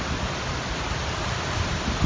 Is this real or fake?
real